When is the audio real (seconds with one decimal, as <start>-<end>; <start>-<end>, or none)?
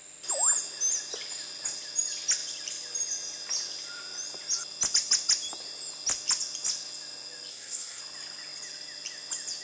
0.0-7.5; 8.0-9.6